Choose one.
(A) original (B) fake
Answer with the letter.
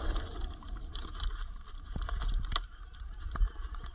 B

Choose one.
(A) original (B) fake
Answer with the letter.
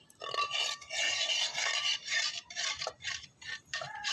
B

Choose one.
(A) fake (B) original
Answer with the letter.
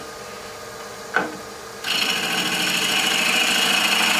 B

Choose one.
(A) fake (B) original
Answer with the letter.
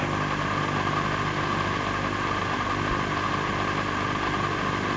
B